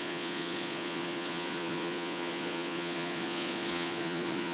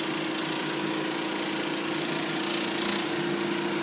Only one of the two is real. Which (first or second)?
second